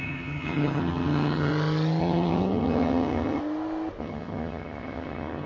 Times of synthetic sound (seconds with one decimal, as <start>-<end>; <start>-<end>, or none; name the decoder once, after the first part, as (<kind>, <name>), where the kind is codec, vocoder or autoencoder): 0.0-1.5 (vocoder, HiFi-GAN); 2.0-3.4; 4.0-5.5